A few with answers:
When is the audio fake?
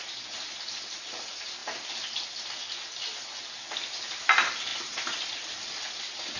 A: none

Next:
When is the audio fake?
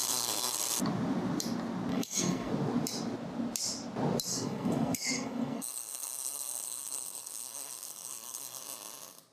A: 0.0-0.8 (codec, SNAC); 1.9-2.5; 4.3-8.6